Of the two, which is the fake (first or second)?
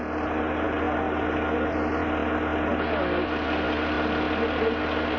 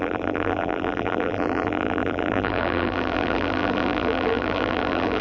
second